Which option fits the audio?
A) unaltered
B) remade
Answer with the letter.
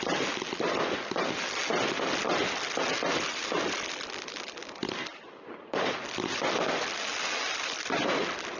A